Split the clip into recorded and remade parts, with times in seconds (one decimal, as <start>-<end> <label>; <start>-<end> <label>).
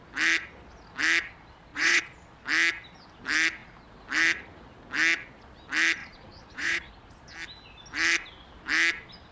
0.0-1.7 recorded; 1.7-2.3 remade; 2.3-6.0 recorded; 6.0-6.9 remade; 6.9-9.3 recorded